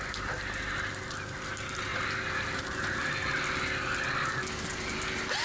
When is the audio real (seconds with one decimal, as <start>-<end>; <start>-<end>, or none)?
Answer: 0.0-5.4